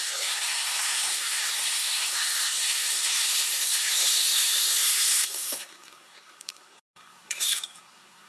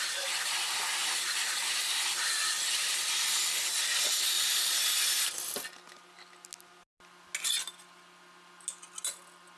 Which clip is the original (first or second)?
second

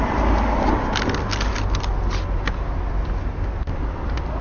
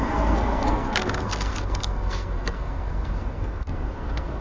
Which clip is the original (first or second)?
first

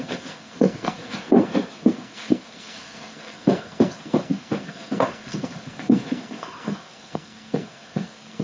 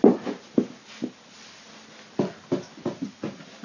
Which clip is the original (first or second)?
second